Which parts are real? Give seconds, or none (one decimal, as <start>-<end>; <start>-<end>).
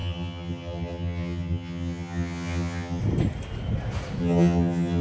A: 3.0-4.2